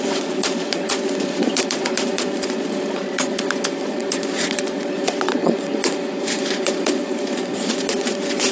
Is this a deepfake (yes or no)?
yes